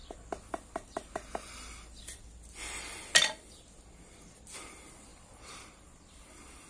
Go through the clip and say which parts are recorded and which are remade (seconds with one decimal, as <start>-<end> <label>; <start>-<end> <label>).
0.0-6.7 recorded